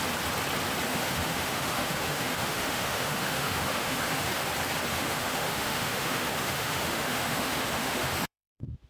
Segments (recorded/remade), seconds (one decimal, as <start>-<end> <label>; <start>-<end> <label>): 0.0-0.9 recorded; 0.9-4.5 remade; 4.5-4.9 recorded; 4.9-8.9 remade